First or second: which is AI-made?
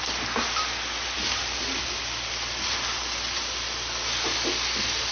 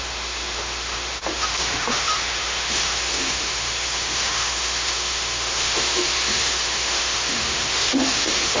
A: second